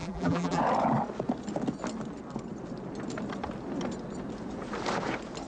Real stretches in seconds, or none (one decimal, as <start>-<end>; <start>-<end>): 0.6-5.5